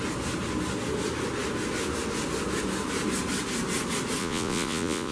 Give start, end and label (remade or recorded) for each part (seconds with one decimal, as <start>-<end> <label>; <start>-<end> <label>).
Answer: 0.0-4.2 recorded; 4.2-5.1 remade